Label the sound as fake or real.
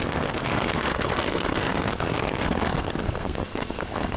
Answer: fake